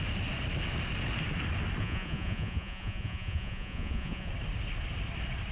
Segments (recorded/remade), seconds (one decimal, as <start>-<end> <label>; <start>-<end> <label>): 0.0-1.8 recorded; 1.8-4.3 remade; 4.3-5.5 recorded